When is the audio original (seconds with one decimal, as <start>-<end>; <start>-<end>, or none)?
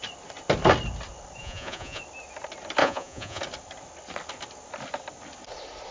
0.0-1.4; 2.0-2.8; 3.4-5.9